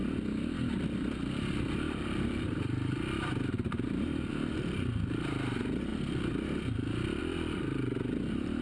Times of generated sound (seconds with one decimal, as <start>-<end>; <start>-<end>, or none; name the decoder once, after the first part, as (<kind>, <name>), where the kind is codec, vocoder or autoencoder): 0.0-5.9 (vocoder, BigVGAN v2); 7.2-8.6